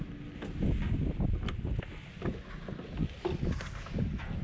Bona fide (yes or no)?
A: yes